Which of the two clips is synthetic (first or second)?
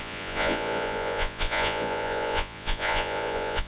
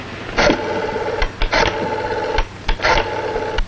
first